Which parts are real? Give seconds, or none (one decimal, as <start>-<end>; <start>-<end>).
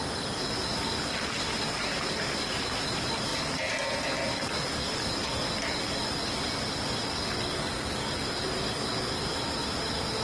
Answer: 0.0-10.2